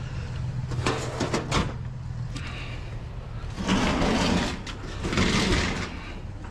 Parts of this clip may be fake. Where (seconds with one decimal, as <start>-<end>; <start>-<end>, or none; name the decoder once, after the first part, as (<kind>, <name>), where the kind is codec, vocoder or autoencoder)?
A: none